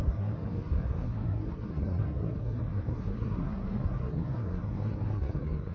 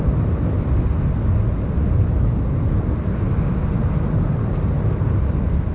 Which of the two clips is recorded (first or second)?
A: second